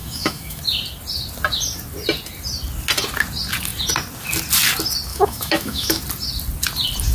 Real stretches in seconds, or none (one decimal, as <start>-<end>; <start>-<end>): 0.6-5.1; 6.0-7.1